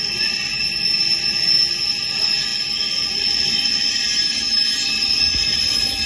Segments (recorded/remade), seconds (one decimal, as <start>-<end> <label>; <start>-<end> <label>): 0.0-6.1 recorded